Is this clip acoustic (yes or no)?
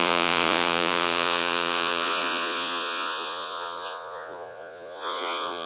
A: no